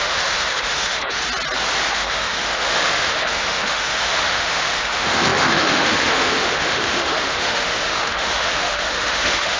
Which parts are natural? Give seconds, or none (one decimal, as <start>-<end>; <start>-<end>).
1.2-1.9